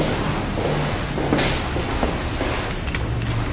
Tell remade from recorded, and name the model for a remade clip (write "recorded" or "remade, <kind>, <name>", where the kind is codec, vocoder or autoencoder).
recorded